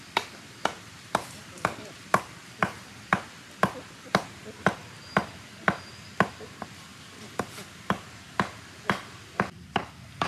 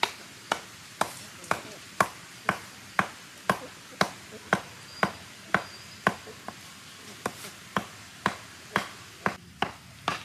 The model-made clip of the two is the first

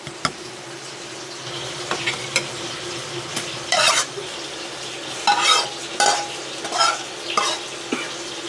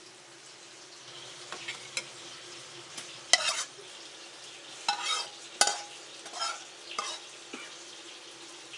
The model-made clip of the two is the first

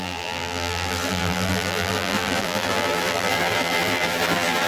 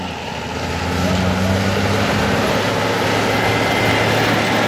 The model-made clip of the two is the first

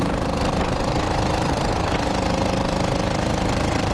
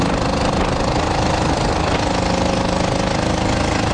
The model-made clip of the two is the first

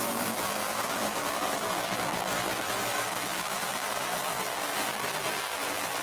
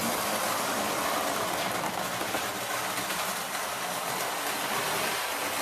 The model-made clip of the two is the first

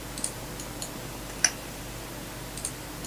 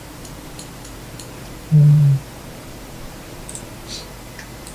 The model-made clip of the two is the second